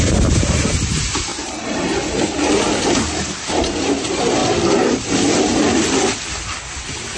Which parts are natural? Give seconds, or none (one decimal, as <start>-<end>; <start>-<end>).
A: 4.4-6.8

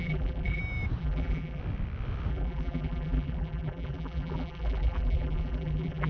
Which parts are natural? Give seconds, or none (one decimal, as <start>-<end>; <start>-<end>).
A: 0.6-1.0; 1.6-2.3

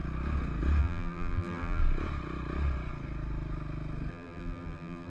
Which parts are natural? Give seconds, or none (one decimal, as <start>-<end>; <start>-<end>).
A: 0.0-0.8; 1.8-4.1